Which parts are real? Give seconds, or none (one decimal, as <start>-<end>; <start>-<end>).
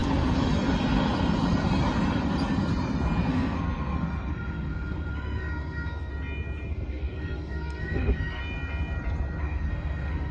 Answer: 0.0-3.3; 6.1-6.7; 8.4-9.4